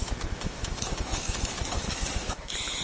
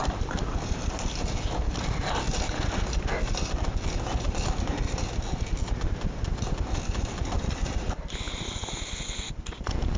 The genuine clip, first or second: second